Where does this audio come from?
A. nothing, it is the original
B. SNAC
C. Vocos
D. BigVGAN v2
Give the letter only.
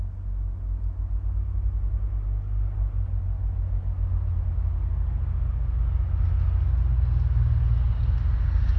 A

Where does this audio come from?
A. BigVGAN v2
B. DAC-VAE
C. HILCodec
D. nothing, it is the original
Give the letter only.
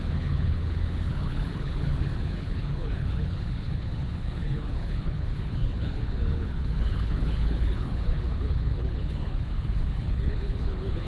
C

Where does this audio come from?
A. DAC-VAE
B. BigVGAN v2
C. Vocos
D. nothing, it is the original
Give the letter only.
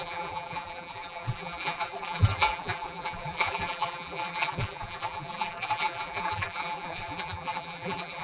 B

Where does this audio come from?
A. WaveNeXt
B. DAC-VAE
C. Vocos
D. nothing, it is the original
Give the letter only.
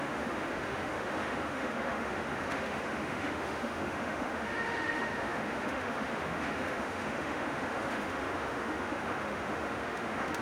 B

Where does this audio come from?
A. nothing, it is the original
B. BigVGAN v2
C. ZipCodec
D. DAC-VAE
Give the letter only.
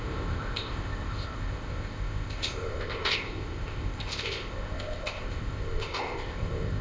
C